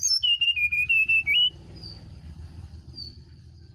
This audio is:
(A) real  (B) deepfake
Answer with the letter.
A